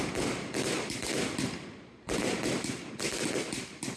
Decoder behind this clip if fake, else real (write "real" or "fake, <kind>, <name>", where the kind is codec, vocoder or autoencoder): real